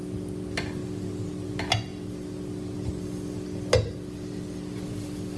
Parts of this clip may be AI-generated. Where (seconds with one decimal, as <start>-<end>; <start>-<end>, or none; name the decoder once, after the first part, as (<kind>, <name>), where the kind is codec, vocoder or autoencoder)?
none